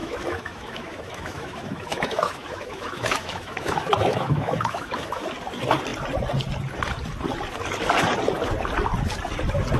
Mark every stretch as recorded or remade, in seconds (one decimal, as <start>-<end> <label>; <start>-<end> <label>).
0.0-5.2 remade; 5.2-9.8 recorded